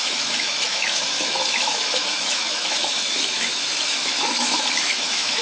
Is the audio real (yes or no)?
no